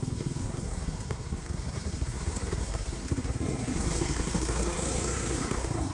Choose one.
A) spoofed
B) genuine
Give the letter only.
A